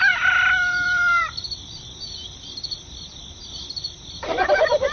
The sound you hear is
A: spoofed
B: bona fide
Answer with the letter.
A